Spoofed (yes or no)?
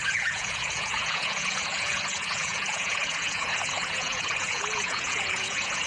yes